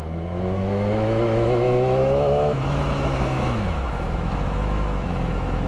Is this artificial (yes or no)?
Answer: yes